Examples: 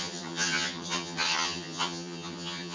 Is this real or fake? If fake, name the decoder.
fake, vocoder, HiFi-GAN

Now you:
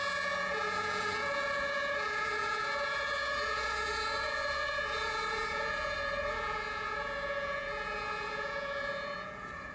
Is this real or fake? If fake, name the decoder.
fake, vocoder, Vocos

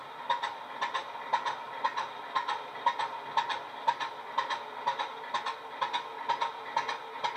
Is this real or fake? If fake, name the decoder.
real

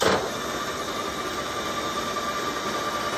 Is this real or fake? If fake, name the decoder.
real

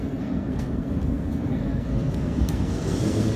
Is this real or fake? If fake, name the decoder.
fake, codec, SNAC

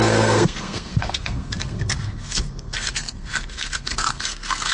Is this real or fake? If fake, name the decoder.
fake, codec, SNAC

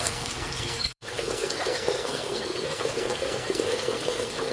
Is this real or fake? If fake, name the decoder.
fake, codec, SNAC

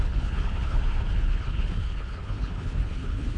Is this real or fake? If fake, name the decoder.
fake, codec, HILCodec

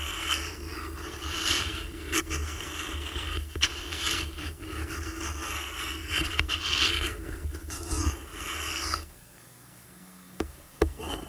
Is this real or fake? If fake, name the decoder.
fake, codec, SNAC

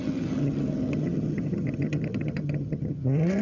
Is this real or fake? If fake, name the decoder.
fake, vocoder, HiFi-GAN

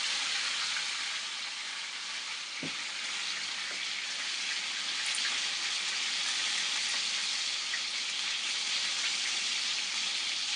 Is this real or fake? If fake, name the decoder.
real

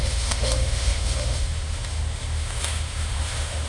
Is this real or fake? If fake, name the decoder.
fake, autoencoder, DAC-VAE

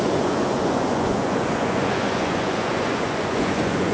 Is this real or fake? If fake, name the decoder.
fake, vocoder, Vocos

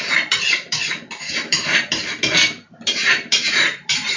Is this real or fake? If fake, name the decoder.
fake, vocoder, BigVGAN v2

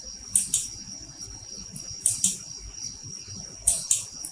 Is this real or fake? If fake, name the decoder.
real